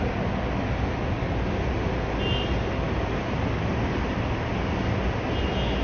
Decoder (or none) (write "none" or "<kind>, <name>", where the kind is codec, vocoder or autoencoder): none